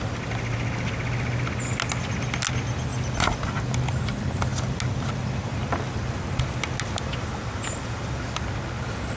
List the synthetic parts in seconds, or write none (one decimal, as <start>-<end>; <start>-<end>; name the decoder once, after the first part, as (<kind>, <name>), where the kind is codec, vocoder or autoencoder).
none